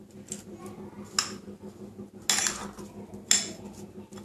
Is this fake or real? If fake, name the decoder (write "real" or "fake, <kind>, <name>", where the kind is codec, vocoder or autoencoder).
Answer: real